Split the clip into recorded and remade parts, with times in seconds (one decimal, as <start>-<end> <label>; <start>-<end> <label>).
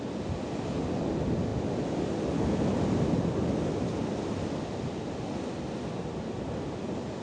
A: 0.0-7.2 recorded